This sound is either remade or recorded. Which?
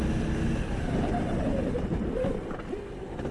recorded